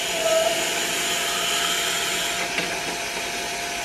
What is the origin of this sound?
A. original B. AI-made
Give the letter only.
A